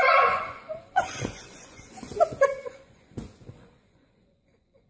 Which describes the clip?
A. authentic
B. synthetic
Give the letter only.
B